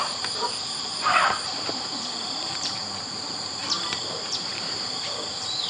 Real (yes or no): no